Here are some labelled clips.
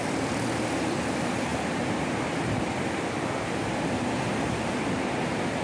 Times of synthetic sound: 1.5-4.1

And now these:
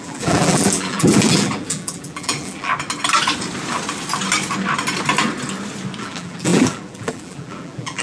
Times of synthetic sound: 0.0-2.7; 6.0-8.0

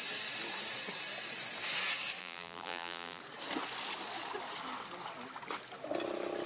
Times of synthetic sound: 2.2-3.2